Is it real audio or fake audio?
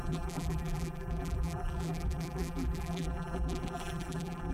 fake